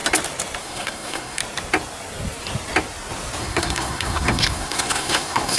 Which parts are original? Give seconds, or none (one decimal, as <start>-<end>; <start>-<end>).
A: 0.0-0.6; 1.4-3.4